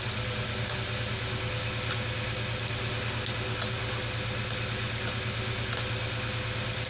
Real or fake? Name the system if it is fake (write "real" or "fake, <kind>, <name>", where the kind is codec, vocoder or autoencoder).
real